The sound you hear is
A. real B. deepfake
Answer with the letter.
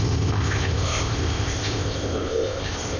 B